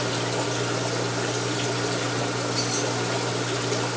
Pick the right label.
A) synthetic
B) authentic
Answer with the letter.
B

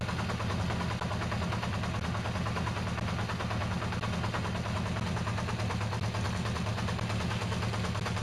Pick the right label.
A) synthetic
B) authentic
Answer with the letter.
B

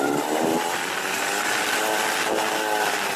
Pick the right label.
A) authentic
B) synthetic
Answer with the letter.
A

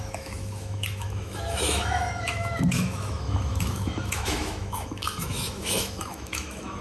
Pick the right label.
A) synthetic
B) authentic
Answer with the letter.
A